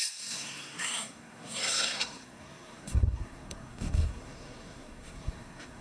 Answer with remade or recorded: remade